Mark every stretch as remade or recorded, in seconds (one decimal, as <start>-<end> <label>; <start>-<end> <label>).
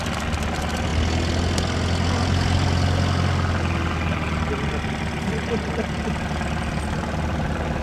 0.0-7.8 recorded